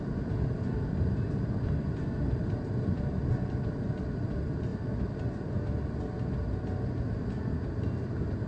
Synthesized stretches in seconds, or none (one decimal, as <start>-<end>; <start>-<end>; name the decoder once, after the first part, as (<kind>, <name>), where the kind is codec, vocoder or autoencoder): none